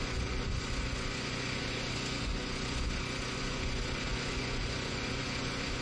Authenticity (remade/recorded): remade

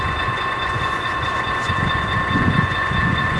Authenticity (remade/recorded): remade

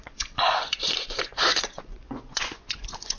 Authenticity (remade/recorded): remade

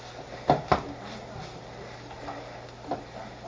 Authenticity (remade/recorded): recorded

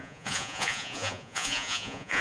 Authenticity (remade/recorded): remade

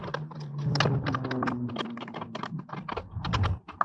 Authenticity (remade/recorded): recorded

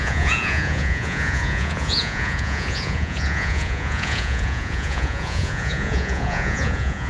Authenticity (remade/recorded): remade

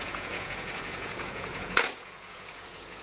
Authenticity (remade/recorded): remade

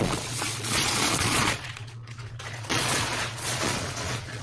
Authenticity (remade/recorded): remade